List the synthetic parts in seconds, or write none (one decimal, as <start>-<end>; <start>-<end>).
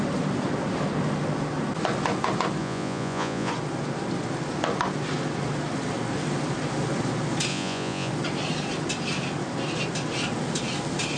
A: 2.6-3.5; 7.5-8.1